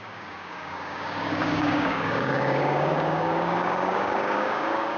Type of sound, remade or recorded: remade